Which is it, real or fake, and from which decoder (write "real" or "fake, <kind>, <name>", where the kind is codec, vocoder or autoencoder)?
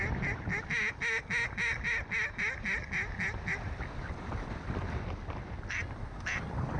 real